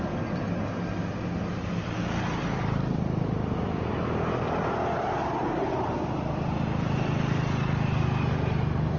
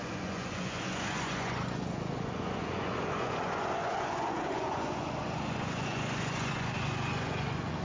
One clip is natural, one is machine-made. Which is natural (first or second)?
first